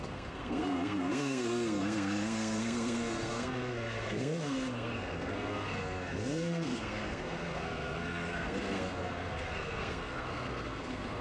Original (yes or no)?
no